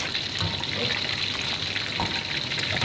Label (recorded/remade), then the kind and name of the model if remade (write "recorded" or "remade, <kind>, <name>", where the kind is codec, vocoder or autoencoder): recorded